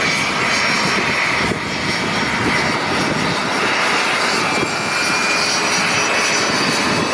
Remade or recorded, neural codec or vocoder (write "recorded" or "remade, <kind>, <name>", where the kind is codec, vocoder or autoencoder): recorded